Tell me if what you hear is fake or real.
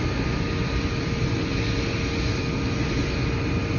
real